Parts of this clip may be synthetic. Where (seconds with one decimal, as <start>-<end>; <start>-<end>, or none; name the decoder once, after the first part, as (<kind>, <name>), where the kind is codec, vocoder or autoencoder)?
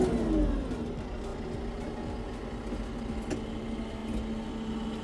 none